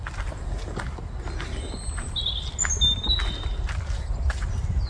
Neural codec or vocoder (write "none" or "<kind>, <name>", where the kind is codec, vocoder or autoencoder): none